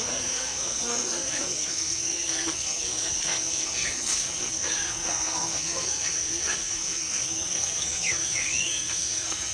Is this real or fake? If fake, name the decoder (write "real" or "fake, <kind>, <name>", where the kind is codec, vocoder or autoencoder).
fake, codec, SNAC